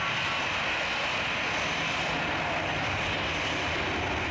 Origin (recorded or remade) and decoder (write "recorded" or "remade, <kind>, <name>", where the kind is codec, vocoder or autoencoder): recorded